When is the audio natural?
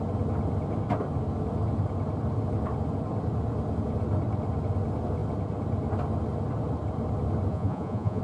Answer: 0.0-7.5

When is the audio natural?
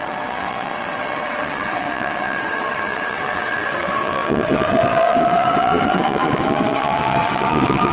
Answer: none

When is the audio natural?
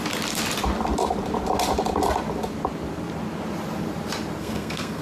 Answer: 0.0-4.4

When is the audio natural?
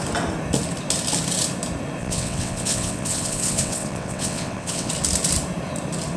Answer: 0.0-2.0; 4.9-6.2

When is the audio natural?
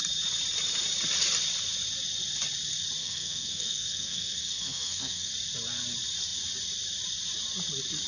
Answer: 0.0-3.0; 5.3-8.1